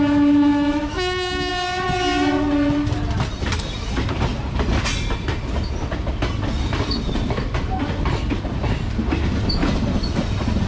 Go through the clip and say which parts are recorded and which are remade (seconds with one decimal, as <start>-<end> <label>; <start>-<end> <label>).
0.0-0.5 recorded; 0.5-1.5 remade; 1.5-10.7 recorded